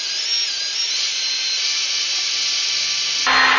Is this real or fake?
real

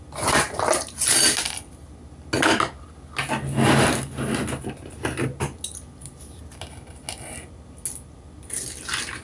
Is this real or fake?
real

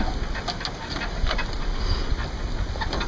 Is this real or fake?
real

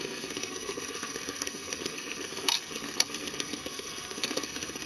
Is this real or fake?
fake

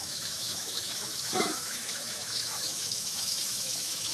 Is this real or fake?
fake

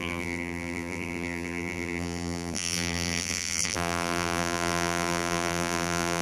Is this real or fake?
fake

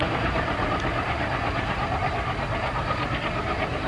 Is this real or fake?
fake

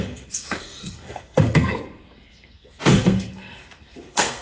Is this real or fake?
fake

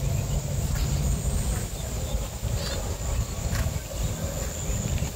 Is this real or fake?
real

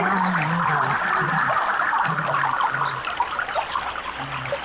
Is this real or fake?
real